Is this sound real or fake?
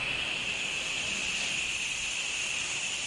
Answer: real